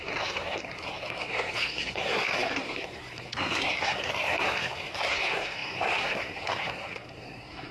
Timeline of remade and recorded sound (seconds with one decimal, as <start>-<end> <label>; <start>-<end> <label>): 0.0-7.7 remade